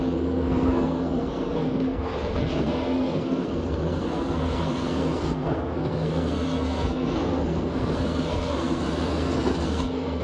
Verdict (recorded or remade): remade